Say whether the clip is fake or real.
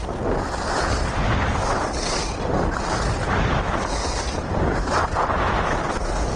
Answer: real